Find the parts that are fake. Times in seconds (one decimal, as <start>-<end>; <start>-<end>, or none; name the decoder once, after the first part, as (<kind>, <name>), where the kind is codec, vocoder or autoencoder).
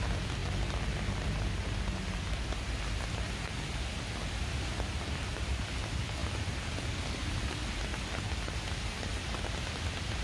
none